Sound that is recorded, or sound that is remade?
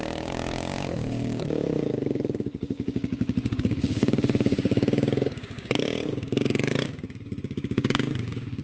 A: remade